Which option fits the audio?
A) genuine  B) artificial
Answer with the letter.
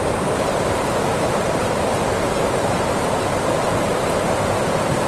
B